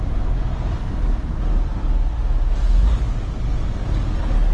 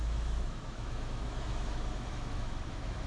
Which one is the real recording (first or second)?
first